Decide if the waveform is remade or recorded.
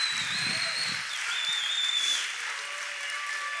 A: remade